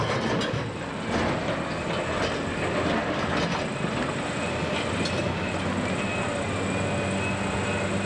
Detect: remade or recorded recorded